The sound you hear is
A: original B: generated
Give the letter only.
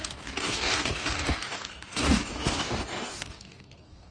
B